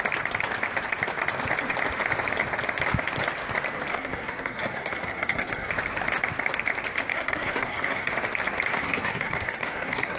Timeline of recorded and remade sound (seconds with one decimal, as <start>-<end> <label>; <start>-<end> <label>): 0.0-3.9 recorded; 3.9-5.7 remade; 5.7-7.1 recorded; 7.1-8.1 remade; 8.1-8.7 recorded; 8.7-10.2 remade